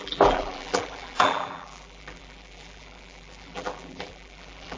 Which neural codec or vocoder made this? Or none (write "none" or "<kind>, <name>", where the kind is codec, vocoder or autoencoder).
vocoder, BigVGAN v2